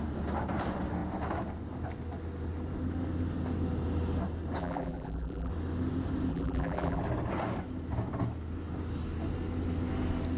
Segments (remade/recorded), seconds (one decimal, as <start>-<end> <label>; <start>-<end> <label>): 0.0-4.6 recorded; 4.6-5.5 remade; 5.5-6.3 recorded; 6.3-7.0 remade; 7.0-10.4 recorded